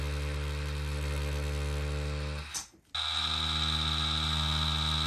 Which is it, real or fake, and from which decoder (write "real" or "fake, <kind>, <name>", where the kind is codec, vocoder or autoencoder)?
real